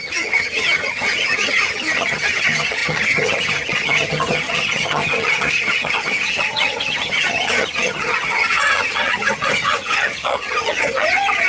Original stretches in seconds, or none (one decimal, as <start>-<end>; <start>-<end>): none